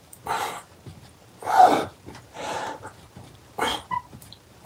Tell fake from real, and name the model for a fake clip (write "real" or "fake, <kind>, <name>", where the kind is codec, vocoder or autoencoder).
fake, vocoder, BigVGAN v2